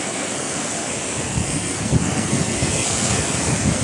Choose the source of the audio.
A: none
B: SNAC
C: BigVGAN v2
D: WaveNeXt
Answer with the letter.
B